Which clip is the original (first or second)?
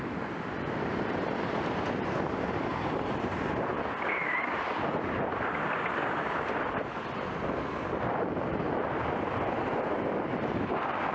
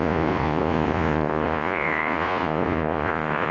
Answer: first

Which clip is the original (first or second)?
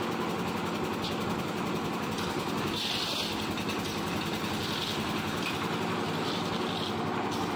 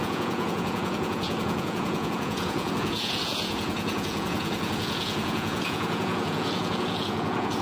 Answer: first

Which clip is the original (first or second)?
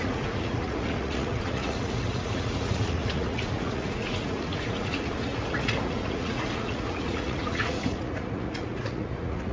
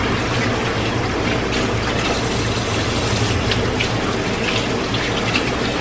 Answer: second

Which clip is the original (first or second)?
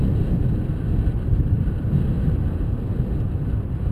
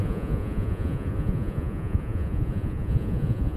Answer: first